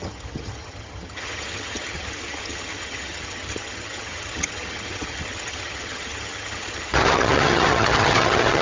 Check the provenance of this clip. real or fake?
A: fake